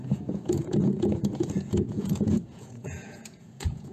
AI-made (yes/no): yes